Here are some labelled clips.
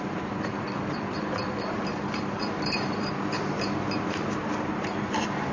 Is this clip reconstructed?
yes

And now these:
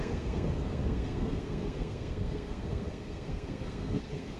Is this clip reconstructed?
yes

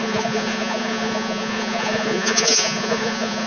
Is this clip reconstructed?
yes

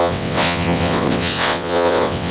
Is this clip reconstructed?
yes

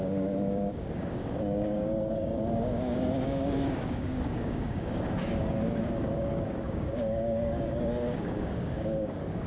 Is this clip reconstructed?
yes